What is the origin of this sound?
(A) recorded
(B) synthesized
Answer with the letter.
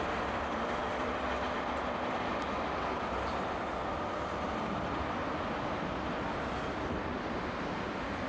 B